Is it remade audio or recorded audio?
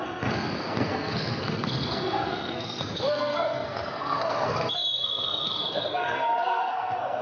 remade